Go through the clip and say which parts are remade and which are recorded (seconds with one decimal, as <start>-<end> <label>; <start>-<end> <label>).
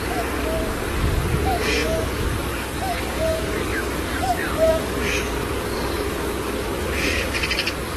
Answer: 0.0-8.0 remade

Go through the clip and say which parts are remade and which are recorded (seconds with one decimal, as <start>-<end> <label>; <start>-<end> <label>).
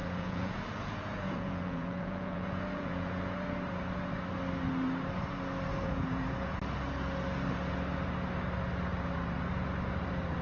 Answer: 0.0-3.3 remade; 3.3-5.7 recorded; 5.7-6.6 remade; 6.6-10.4 recorded